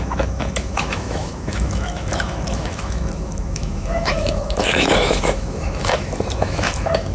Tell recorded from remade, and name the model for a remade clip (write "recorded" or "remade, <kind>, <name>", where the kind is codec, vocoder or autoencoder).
remade, autoencoder, DAC-VAE